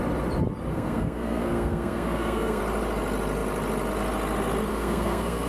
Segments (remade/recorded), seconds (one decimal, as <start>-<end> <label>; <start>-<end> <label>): 0.0-0.7 recorded; 0.7-2.6 remade; 2.6-4.7 recorded; 4.7-5.5 remade